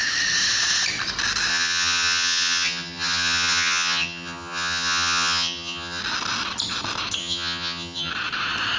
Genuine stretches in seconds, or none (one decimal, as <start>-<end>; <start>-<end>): 0.0-1.5; 6.0-7.2; 8.1-8.8